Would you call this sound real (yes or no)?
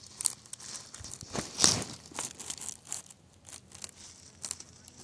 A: yes